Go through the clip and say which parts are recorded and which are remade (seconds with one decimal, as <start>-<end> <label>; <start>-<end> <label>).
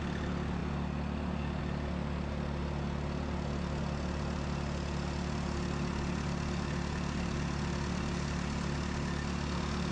0.0-9.9 recorded